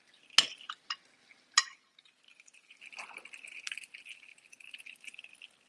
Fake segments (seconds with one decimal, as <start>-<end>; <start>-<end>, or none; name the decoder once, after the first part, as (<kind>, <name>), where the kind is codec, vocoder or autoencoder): 1.6-2.8 (vocoder, BigVGAN v2); 4.3-5.2